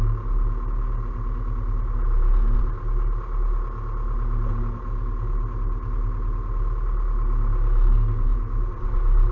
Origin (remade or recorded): recorded